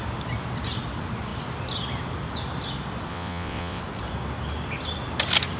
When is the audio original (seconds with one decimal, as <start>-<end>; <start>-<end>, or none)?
0.0-3.1; 3.8-5.6